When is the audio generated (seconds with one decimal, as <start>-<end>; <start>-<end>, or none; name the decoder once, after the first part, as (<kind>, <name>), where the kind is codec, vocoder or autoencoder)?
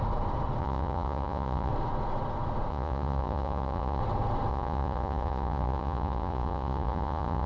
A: 0.6-1.7 (vocoder, Vocos); 2.7-4.0; 4.5-7.5